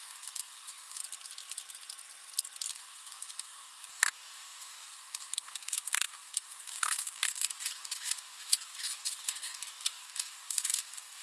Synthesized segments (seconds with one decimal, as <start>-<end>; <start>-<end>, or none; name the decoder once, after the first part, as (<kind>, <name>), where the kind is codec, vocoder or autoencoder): 0.0-1.0 (codec, DAC); 2.7-11.2

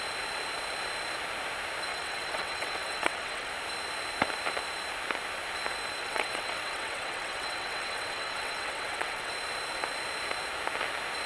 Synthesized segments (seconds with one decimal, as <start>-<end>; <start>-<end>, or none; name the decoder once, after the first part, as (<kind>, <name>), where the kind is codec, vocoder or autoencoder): 1.9-3.5 (vocoder, WaveNeXt); 6.0-9.3